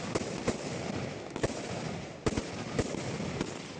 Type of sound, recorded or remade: recorded